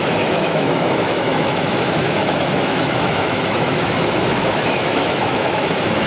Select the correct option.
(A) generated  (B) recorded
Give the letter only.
A